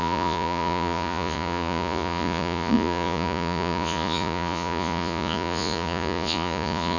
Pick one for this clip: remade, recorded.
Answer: remade